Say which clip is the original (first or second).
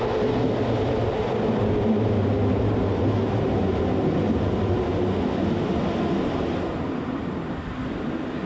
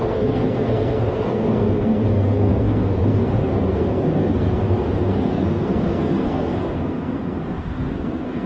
first